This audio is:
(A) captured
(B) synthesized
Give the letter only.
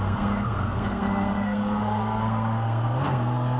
B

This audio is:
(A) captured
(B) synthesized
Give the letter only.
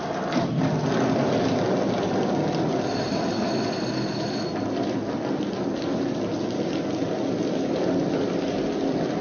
A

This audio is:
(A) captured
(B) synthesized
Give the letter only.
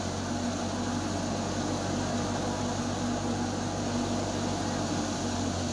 A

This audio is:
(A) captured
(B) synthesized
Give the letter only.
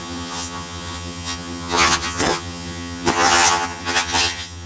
B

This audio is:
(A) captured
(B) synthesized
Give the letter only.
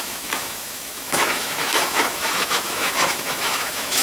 B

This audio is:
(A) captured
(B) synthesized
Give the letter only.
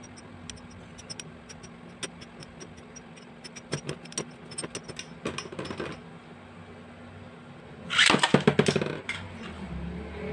A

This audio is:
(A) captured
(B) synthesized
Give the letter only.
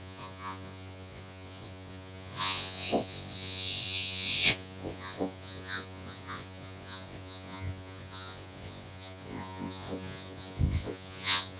B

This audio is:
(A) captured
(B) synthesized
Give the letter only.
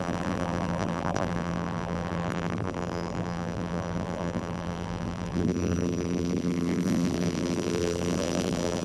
B